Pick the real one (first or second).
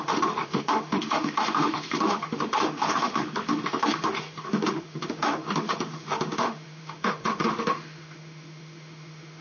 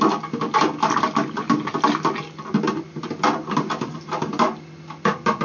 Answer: second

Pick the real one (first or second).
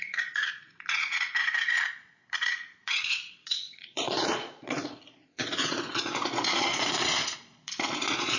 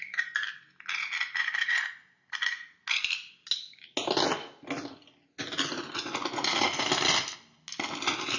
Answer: second